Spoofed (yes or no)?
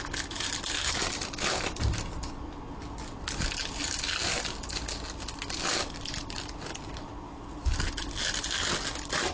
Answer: no